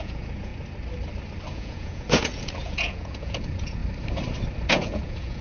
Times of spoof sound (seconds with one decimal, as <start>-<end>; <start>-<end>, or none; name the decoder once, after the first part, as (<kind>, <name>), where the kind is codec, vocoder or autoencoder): 0.0-0.5 (vocoder, Vocos); 1.5-3.8; 4.7-5.4